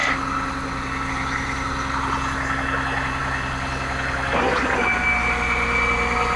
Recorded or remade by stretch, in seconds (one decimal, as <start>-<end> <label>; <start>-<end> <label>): 0.0-6.4 recorded